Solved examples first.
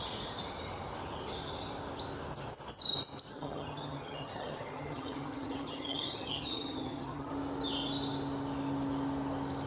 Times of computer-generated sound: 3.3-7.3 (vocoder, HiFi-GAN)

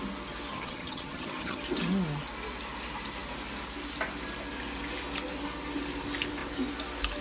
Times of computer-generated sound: 0.5-1.6 (vocoder, HiFi-GAN)

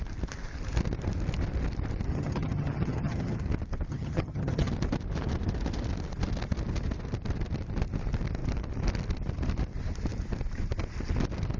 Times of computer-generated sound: 2.1-3.4 (vocoder, HiFi-GAN); 3.9-4.7

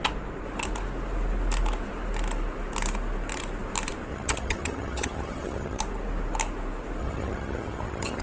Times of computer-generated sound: 4.1-5.8 (vocoder, HiFi-GAN); 7.0-8.2

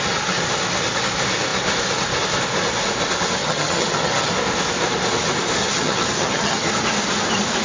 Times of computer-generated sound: 3.4-4.3 (vocoder, HiFi-GAN); 5.6-6.7

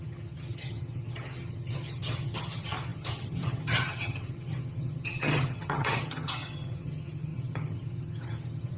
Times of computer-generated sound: 0.0-8.8 (vocoder, HiFi-GAN)